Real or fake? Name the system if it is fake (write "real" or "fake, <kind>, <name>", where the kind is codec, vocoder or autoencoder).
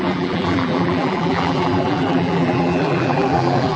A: fake, vocoder, BigVGAN v2